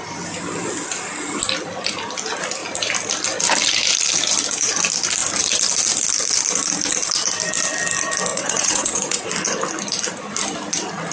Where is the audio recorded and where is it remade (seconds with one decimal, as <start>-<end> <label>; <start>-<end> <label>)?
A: 0.0-8.3 recorded; 8.3-9.3 remade; 9.3-11.1 recorded